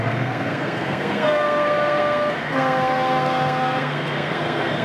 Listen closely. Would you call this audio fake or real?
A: fake